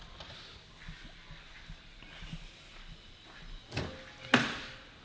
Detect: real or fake real